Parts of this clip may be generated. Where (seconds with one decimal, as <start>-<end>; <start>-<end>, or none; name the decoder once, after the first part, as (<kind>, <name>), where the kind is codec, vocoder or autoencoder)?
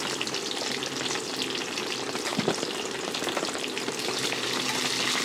2.3-3.0 (vocoder, BigVGAN v2)